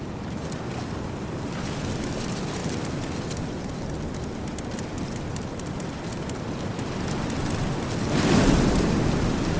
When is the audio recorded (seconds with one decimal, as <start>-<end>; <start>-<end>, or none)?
0.0-9.6